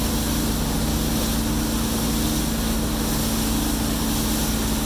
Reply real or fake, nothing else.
real